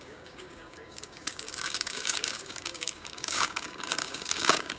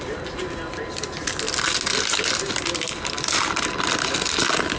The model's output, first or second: first